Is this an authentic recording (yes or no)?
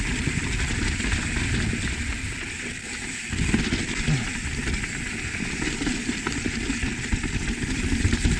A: yes